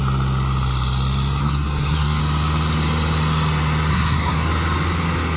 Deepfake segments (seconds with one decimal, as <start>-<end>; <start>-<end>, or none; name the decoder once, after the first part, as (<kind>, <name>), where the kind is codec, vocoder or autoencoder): 1.4-2.2 (codec, SNAC); 3.9-4.5